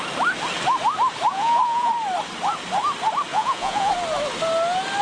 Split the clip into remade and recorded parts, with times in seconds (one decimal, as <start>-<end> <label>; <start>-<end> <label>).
0.0-1.3 recorded; 1.3-1.9 remade; 1.9-3.3 recorded; 3.3-3.9 remade; 3.9-5.0 recorded